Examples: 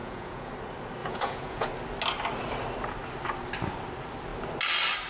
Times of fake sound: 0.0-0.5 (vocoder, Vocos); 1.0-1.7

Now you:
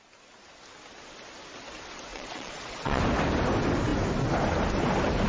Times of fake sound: 2.1-3.0 (vocoder, Vocos)

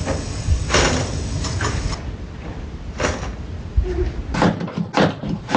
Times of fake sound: none